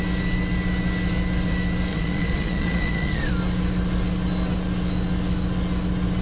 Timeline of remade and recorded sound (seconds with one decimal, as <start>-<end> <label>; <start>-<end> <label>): 0.0-1.9 recorded; 1.9-3.3 remade; 3.3-6.2 recorded